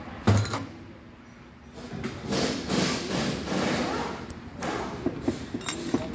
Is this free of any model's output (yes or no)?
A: yes